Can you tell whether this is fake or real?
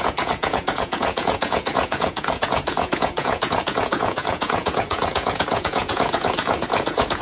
fake